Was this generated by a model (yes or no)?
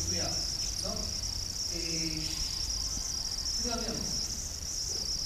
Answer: no